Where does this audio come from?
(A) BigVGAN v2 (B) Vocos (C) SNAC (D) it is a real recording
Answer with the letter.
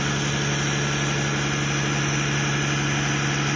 D